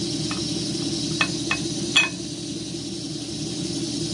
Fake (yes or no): no